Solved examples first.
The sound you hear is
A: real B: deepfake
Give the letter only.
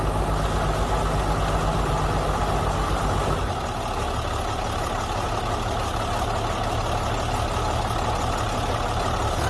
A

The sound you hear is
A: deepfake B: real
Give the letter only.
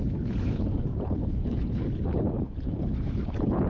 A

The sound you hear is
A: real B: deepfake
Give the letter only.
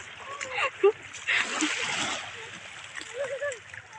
A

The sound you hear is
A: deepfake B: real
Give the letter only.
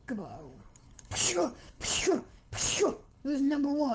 A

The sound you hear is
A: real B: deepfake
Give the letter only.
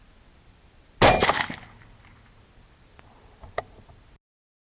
A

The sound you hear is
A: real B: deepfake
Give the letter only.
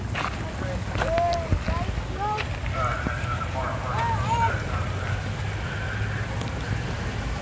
A